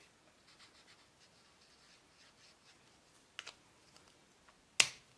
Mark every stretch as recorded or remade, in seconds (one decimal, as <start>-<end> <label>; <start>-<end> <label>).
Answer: 0.0-5.2 recorded

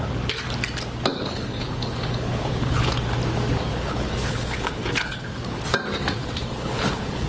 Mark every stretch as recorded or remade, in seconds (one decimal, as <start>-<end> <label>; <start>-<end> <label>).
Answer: 0.0-1.1 recorded; 1.1-2.9 remade; 2.9-3.7 recorded; 3.7-5.6 remade; 5.6-6.2 recorded; 6.2-7.3 remade

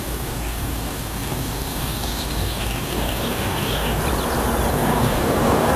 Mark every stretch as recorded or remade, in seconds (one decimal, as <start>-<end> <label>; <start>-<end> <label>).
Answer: 0.0-4.0 remade; 4.0-4.7 recorded; 4.7-5.8 remade

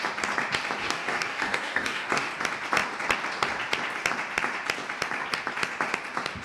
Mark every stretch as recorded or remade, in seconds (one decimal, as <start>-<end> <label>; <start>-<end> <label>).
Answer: 0.0-0.8 recorded; 0.8-2.3 remade; 2.3-6.4 recorded

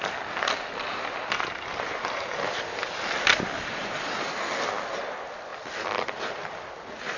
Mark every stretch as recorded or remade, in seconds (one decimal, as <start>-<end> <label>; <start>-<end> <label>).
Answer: 0.0-7.2 recorded

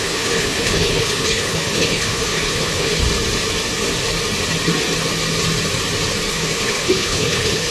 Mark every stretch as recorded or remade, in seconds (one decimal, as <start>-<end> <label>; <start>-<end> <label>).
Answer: 0.0-3.0 remade; 3.0-6.3 recorded; 6.3-7.7 remade

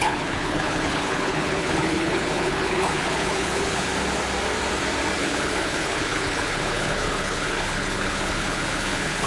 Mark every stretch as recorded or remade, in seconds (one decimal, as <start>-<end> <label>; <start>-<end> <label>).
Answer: 0.0-3.9 remade; 3.9-5.2 recorded; 5.2-9.3 remade

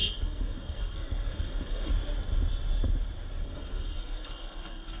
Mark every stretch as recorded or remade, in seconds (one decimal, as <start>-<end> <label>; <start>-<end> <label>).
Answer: 0.0-1.9 remade; 1.9-3.4 recorded; 3.4-5.0 remade